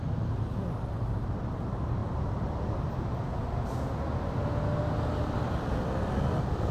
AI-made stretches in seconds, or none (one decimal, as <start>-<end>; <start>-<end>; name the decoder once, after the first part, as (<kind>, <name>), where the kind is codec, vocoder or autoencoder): none